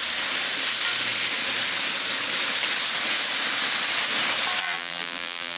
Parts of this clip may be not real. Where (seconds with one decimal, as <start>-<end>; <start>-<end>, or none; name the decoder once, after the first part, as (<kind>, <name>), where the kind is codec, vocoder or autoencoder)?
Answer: 4.6-5.6 (vocoder, BigVGAN v2)